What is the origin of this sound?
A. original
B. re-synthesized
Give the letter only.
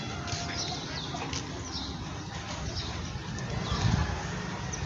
A